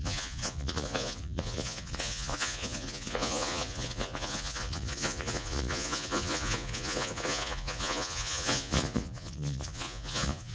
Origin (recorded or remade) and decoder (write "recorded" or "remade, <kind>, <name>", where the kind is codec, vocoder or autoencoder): remade, vocoder, Vocos